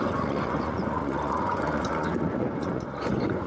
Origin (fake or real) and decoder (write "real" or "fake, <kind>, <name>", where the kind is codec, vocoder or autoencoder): fake, vocoder, Vocos